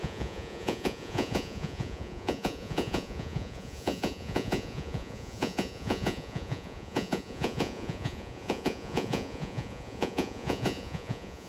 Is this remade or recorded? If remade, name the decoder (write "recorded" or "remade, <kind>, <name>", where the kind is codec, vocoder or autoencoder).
remade, vocoder, Vocos